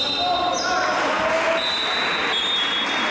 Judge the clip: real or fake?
real